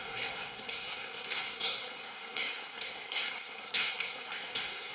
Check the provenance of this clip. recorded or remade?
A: remade